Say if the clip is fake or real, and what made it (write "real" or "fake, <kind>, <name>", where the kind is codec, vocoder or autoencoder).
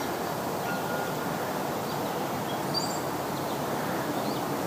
real